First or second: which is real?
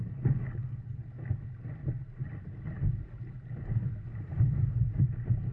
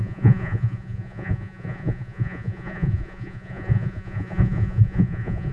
first